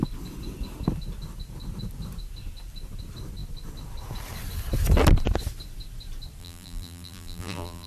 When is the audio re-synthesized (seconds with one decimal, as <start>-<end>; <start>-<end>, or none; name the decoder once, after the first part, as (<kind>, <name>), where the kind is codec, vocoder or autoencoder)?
6.4-7.9 (vocoder, BigVGAN v2)